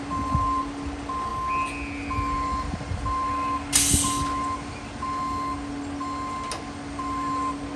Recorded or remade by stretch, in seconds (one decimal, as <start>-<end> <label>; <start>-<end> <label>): 0.0-7.8 recorded